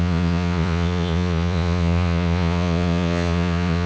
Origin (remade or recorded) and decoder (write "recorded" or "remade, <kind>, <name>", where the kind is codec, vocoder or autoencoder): remade, vocoder, Vocos